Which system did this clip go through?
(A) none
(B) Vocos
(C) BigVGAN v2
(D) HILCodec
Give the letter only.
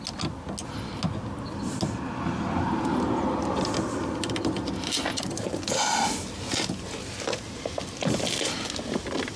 A